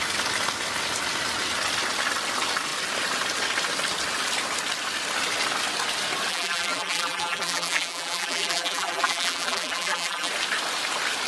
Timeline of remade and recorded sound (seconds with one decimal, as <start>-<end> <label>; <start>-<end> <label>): 0.0-6.3 recorded; 6.3-10.3 remade; 10.3-11.3 recorded